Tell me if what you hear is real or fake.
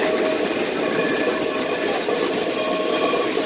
real